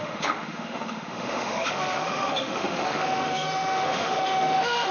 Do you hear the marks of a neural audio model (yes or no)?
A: yes